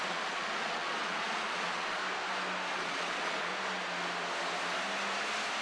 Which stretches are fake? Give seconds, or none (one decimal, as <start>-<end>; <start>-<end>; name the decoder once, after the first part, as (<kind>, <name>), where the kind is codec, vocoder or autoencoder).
0.0-2.0 (vocoder, Vocos); 2.8-3.5